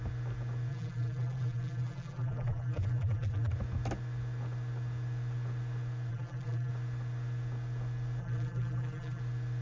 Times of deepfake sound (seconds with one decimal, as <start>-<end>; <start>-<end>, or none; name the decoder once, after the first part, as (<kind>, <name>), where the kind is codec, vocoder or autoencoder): 0.7-3.5 (vocoder, BigVGAN v2); 6.1-6.7; 8.2-9.2